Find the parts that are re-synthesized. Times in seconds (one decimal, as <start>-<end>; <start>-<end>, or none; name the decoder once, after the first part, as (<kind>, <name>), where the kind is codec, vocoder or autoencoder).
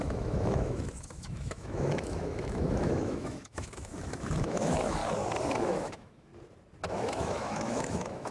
0.0-5.0 (autoencoder, DAC-VAE); 5.5-6.3; 6.9-8.3